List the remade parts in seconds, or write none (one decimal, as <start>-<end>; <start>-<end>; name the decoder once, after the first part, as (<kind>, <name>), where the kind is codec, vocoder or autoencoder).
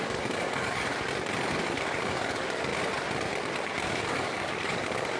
0.0-0.9 (codec, DAC); 1.4-2.7; 3.9-5.2